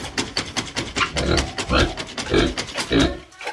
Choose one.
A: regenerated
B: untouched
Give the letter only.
B